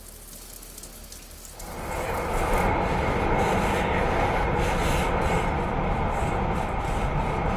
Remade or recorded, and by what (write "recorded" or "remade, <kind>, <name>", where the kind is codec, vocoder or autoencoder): recorded